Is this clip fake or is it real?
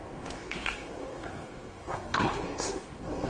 fake